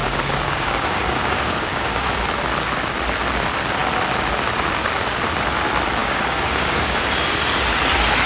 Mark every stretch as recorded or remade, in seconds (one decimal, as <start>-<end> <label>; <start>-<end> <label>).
0.0-2.2 remade; 2.2-6.0 recorded; 6.0-7.0 remade; 7.0-8.3 recorded